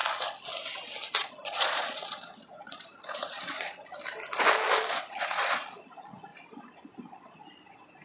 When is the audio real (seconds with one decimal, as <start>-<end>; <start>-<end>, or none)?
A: 0.0-1.3; 3.9-4.9; 6.3-6.9

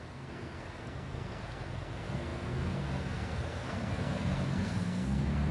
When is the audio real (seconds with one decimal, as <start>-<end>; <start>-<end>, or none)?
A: none

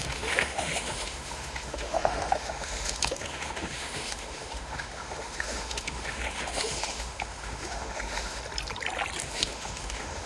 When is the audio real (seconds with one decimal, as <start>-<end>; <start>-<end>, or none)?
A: 8.4-9.2

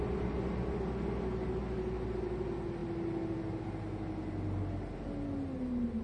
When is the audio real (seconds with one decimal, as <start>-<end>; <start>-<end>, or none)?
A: 0.0-6.0

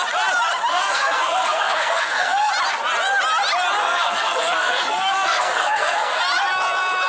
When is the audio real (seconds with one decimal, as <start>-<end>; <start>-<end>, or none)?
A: 0.0-0.7; 2.5-3.8; 6.2-7.1

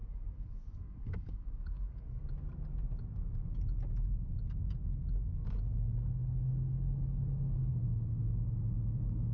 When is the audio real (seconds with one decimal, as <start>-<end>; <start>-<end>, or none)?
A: 2.2-6.2; 7.7-9.3

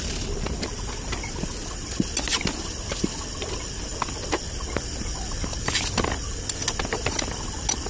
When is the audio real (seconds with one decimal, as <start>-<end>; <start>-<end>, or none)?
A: 0.0-7.9